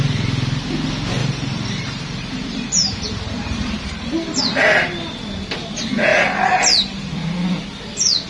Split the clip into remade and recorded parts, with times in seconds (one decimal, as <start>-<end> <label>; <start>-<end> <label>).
0.0-1.2 recorded; 1.2-4.6 remade; 4.6-6.1 recorded; 6.1-7.1 remade; 7.1-8.3 recorded